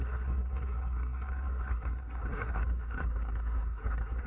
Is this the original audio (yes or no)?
no